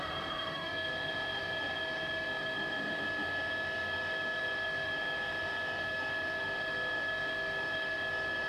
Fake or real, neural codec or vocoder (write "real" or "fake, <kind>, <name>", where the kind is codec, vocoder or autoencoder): fake, autoencoder, DAC-VAE